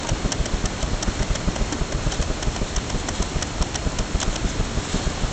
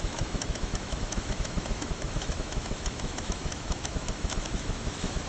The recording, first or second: first